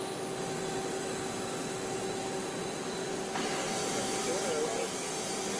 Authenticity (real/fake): real